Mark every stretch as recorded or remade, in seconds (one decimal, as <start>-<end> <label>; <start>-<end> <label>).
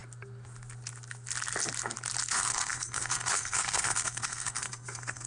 0.0-2.3 recorded; 2.3-5.3 remade